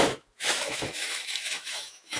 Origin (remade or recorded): remade